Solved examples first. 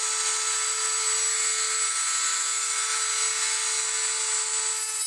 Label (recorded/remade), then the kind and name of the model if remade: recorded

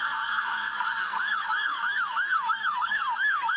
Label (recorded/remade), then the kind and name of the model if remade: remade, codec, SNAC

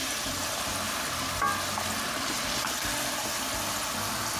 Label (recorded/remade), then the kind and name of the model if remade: recorded